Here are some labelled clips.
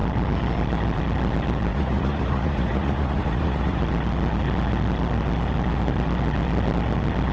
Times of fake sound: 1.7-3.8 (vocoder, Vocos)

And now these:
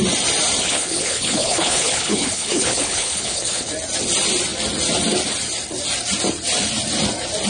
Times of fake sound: 0.6-3.7 (codec, HILCodec)